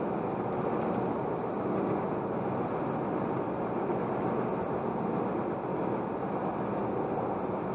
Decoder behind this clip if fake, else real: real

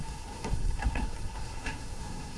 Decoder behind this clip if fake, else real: fake, codec, SNAC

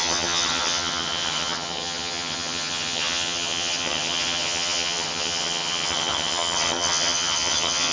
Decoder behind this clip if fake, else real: fake, vocoder, HiFi-GAN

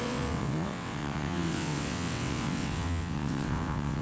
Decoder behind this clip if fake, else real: fake, vocoder, WaveNeXt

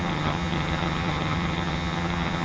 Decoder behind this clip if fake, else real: fake, vocoder, HiFi-GAN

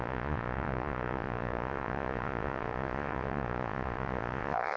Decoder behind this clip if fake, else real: fake, vocoder, Vocos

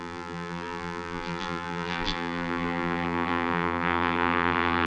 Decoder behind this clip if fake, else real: fake, vocoder, BigVGAN v2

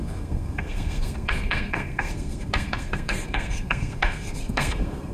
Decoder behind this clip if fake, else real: fake, codec, SNAC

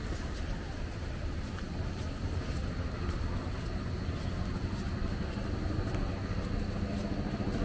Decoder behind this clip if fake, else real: real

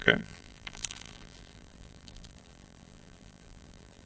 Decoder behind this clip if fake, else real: fake, vocoder, BigVGAN v2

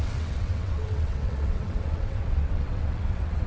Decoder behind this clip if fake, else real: fake, vocoder, WaveNeXt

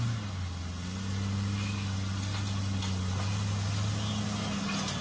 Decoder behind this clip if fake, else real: real